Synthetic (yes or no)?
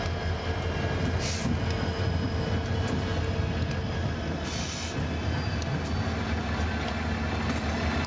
no